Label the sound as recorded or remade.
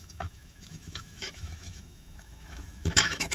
remade